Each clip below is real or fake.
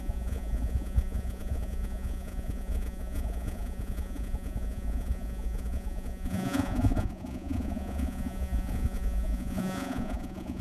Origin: fake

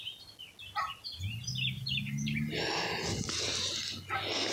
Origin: real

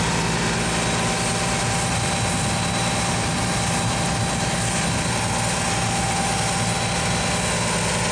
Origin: real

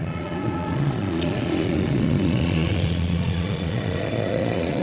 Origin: fake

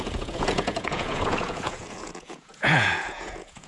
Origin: fake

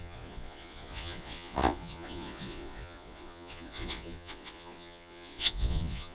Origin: fake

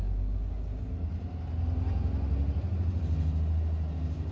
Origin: real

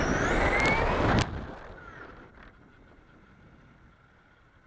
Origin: real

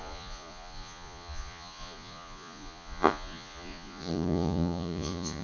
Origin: fake